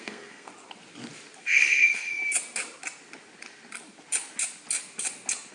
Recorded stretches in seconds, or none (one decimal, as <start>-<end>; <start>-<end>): 0.5-1.4; 2.2-5.5